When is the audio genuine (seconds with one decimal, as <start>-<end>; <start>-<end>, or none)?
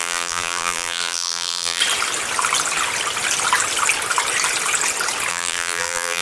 1.8-5.3